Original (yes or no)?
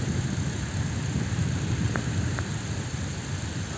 yes